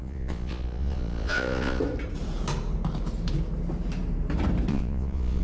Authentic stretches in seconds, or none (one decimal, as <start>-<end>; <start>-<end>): 1.8-4.7